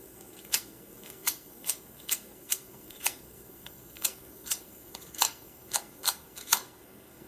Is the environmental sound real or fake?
fake